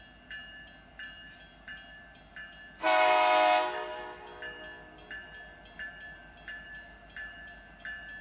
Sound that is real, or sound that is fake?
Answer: real